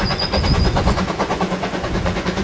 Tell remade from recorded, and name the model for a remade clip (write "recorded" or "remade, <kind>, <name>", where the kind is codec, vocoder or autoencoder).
remade, vocoder, Vocos